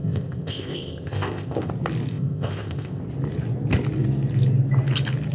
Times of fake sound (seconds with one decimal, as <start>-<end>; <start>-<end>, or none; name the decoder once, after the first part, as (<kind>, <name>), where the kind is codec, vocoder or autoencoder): 0.0-1.7 (codec, ZipCodec); 2.1-3.0